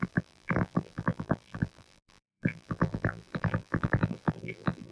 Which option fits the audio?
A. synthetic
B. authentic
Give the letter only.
A